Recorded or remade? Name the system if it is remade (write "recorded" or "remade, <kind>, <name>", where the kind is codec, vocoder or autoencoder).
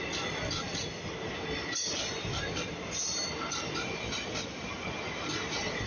recorded